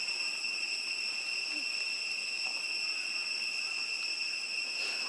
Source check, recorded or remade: recorded